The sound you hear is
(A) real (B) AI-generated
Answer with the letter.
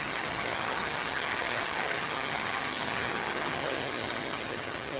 B